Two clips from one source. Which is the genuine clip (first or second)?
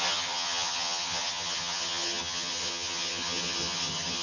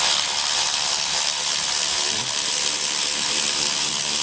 second